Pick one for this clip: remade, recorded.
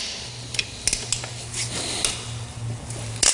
recorded